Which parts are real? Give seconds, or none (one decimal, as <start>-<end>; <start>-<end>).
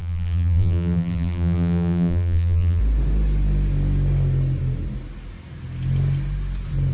2.8-6.9